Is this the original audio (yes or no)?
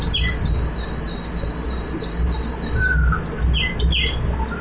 yes